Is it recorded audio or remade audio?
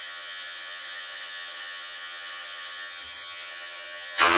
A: remade